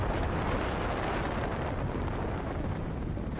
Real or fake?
real